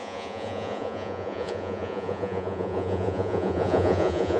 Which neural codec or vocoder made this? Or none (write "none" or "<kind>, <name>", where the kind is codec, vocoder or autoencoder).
vocoder, Vocos